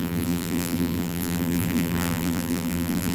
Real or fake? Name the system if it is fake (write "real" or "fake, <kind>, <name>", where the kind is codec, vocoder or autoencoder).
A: fake, vocoder, BigVGAN v2